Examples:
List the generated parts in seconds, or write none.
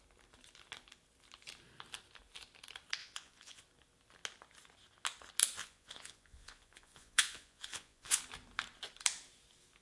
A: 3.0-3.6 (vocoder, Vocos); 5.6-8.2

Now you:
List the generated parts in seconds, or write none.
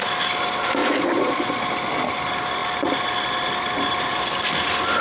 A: 0.8-1.6 (vocoder, Vocos)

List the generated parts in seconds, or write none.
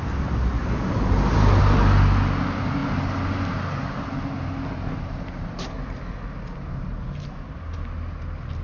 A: none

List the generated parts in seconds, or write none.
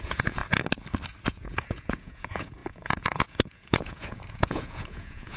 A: 0.0-0.4 (vocoder, Vocos); 1.3-5.4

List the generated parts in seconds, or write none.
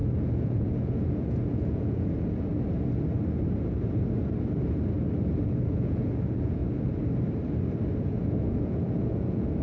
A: 0.0-2.5 (vocoder, Vocos); 5.4-6.6; 8.0-9.6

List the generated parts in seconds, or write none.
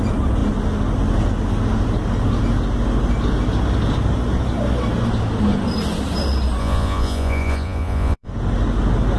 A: 6.6-8.3 (vocoder, Vocos)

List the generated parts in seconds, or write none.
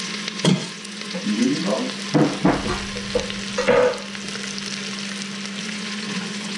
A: 0.0-1.6 (vocoder, Vocos); 5.6-6.6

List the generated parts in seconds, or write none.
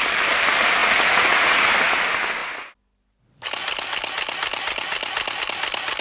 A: 0.8-1.7 (vocoder, Vocos)